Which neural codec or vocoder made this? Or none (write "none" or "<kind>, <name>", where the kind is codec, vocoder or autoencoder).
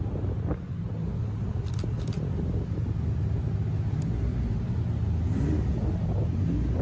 none